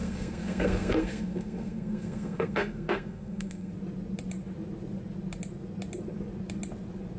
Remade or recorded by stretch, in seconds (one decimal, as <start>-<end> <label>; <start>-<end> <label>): 0.0-3.7 remade; 3.7-7.2 recorded